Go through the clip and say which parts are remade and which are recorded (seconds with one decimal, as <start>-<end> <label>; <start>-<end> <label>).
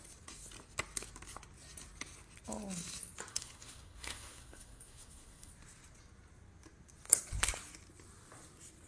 0.0-3.3 recorded; 3.3-5.5 remade; 5.5-8.9 recorded